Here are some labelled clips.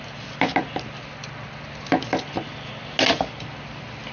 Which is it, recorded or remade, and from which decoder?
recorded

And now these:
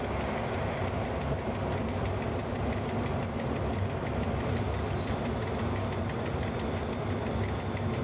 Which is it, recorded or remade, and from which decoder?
recorded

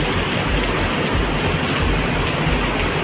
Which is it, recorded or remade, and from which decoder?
recorded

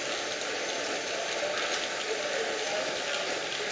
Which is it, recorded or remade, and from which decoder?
recorded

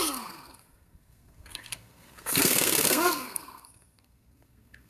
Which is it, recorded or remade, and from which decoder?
remade, codec, SNAC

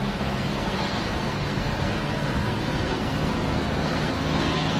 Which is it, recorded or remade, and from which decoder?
remade, codec, SNAC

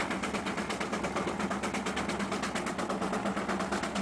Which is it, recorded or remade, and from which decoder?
recorded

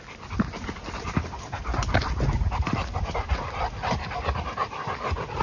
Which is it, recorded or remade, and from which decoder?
recorded